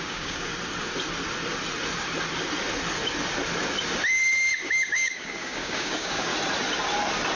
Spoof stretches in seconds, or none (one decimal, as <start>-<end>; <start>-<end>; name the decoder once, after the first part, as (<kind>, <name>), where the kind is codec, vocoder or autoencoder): 0.0-0.5 (codec, DAC); 4.6-6.3